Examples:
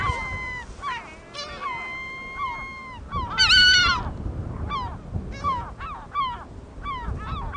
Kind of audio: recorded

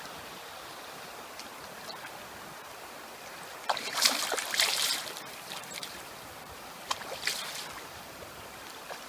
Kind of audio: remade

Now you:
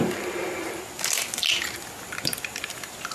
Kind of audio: recorded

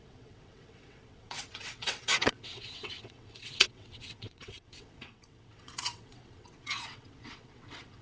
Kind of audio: remade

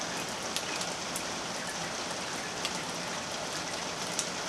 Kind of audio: recorded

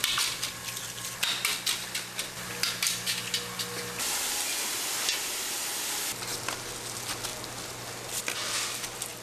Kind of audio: recorded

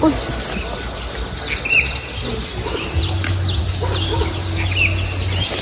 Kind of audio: recorded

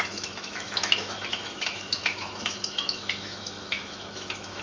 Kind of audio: remade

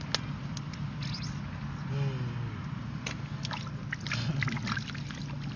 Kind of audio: recorded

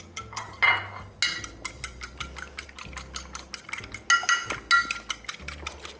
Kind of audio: recorded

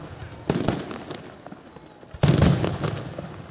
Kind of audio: recorded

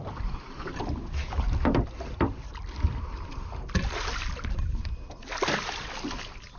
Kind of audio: recorded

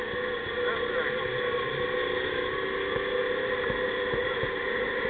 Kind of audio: recorded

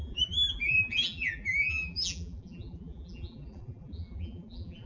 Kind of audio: remade